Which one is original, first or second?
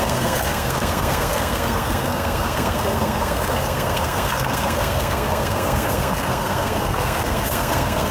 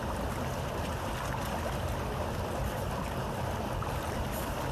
second